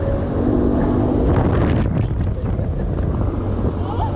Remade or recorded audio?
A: recorded